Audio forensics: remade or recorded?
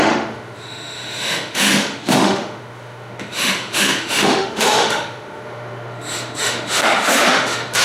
remade